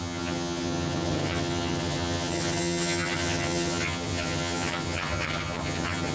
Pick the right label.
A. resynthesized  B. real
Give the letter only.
A